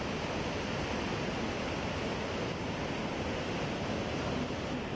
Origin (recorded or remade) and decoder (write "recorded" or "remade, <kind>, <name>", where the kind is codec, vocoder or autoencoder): recorded